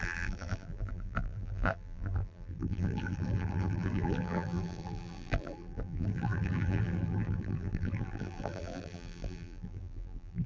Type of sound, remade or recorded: remade